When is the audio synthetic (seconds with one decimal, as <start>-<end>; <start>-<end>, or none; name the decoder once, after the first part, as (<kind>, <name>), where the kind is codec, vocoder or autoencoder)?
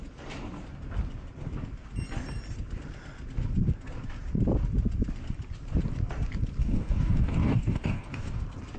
6.6-8.4 (codec, DAC)